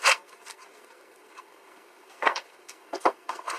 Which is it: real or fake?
fake